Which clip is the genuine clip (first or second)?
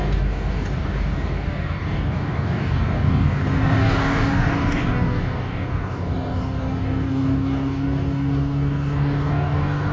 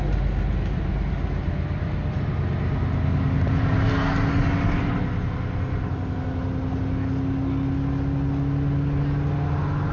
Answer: second